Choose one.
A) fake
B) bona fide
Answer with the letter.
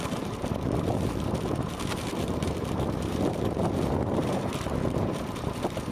A